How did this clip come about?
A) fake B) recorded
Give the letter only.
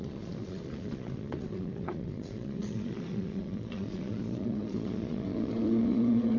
A